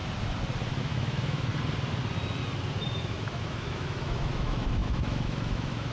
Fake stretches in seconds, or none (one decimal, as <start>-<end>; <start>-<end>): 0.8-1.5; 3.0-5.9

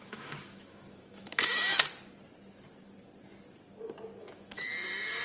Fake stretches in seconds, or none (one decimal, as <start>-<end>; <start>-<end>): 0.0-1.7; 4.2-5.2

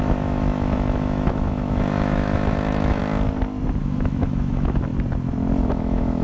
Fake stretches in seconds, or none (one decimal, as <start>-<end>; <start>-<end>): 0.0-3.0; 3.8-4.9; 5.7-6.2

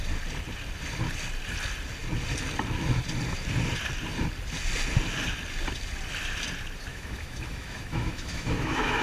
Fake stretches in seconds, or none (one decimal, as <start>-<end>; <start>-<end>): 6.9-9.0